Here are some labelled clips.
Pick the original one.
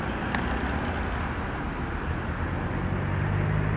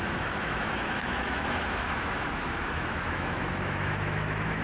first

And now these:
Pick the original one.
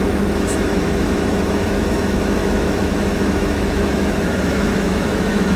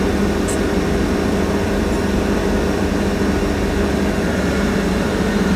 second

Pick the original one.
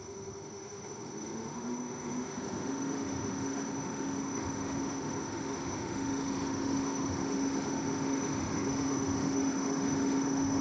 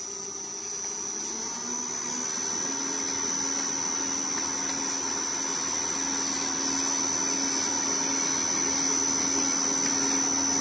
second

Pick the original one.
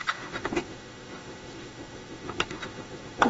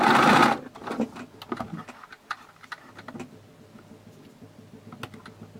second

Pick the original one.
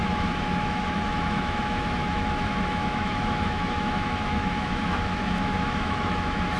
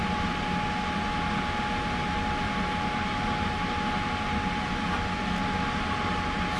second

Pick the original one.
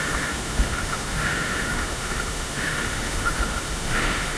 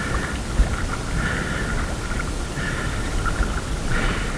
second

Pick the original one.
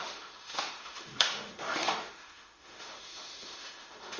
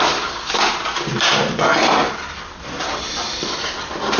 second